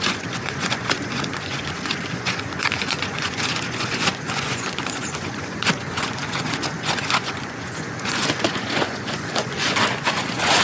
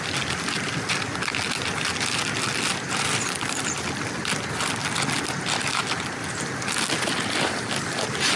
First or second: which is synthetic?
first